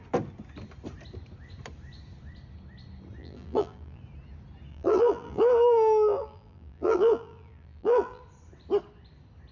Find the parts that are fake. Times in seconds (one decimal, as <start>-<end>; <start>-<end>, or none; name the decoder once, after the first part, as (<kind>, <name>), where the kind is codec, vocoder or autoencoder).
3.2-4.0 (vocoder, BigVGAN v2); 4.7-8.2